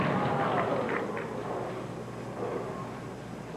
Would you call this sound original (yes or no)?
yes